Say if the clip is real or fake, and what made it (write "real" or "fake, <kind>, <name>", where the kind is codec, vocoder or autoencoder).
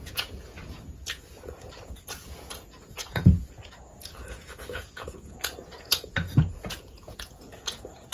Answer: fake, vocoder, Vocos